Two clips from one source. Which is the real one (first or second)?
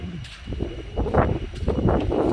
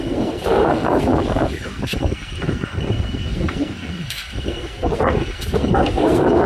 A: first